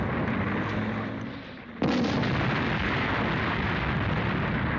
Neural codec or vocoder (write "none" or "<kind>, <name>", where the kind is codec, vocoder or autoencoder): none